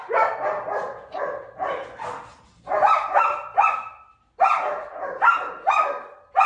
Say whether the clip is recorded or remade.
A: recorded